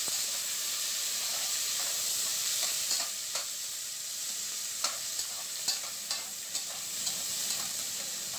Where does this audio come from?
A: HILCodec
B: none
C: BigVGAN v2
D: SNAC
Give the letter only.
C